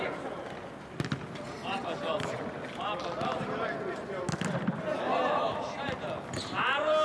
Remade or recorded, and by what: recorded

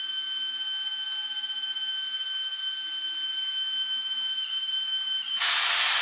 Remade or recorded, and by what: recorded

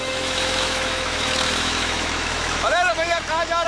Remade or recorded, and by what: remade, autoencoder, DAC-VAE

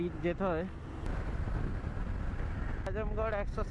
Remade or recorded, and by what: recorded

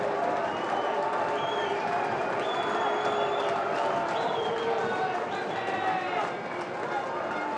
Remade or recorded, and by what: recorded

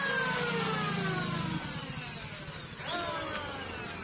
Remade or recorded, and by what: recorded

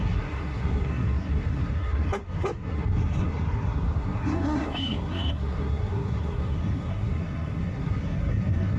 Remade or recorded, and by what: remade, codec, SNAC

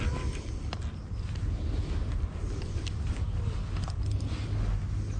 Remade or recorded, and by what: recorded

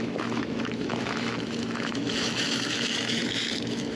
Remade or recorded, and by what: remade, autoencoder, DAC-VAE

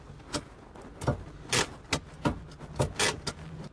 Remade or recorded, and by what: recorded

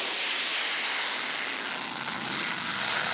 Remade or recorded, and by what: recorded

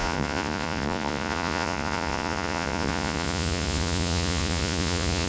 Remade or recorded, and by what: remade, vocoder, Vocos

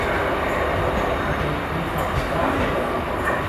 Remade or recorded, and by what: recorded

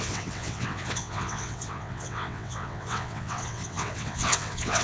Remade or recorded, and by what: remade, vocoder, WaveNeXt